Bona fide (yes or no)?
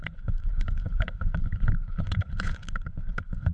no